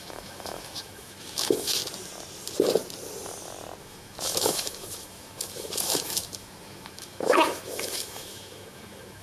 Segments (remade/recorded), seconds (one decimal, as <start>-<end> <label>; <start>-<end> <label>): 0.0-1.8 remade; 1.8-3.8 recorded; 3.8-9.2 remade